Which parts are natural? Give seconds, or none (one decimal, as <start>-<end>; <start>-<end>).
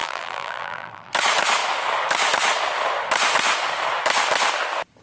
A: 1.1-5.0